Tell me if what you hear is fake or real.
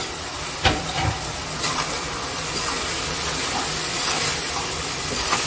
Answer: fake